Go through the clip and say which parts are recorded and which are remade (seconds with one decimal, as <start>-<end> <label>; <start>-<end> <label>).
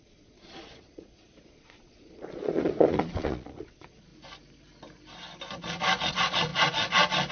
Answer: 0.0-4.1 remade; 4.1-6.1 recorded; 6.1-6.5 remade; 6.5-7.3 recorded